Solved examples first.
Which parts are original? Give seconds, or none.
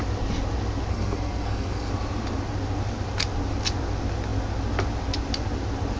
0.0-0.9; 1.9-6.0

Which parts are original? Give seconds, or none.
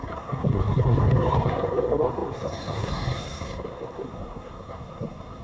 none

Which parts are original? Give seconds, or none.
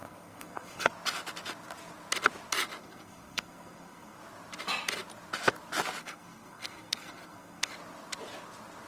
0.9-2.8; 4.2-6.0; 7.7-8.9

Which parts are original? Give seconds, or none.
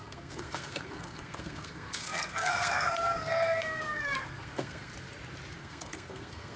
4.9-5.6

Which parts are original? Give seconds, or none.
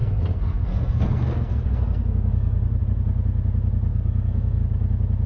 2.8-3.9; 4.6-5.3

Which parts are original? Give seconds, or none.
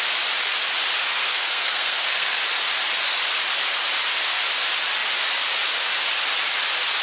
0.0-1.1; 2.4-7.0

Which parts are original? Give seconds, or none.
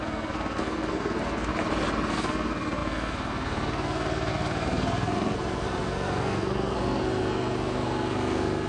1.5-2.1